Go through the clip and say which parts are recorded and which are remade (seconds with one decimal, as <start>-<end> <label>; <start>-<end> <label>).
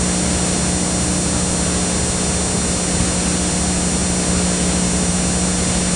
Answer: 0.0-6.0 recorded